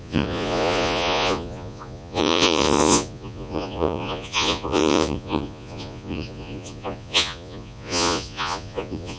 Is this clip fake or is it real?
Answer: fake